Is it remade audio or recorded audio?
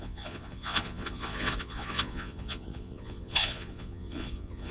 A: remade